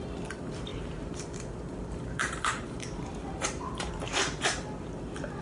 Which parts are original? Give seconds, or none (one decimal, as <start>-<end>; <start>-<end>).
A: none